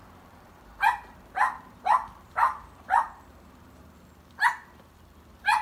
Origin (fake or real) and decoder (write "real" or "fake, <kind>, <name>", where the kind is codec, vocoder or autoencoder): fake, vocoder, BigVGAN v2